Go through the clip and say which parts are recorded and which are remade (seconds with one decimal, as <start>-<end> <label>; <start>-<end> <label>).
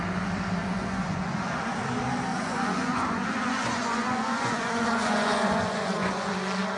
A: 0.0-0.6 recorded; 0.6-1.5 remade; 1.5-2.3 recorded; 2.3-6.3 remade; 6.3-6.8 recorded